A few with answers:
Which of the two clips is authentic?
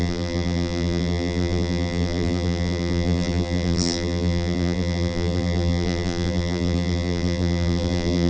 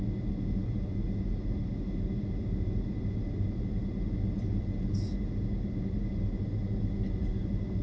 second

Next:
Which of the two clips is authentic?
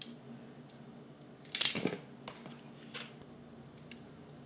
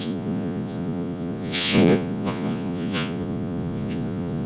first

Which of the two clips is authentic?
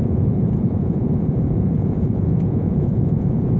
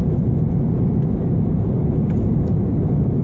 second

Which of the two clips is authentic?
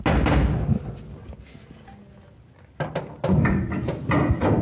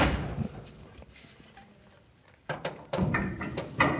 first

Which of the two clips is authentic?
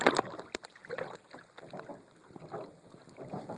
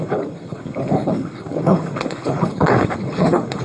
first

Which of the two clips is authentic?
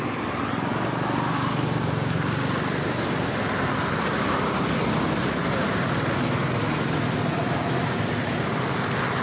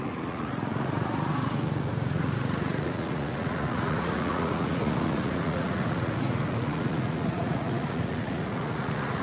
first